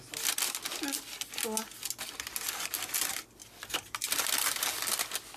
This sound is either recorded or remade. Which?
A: recorded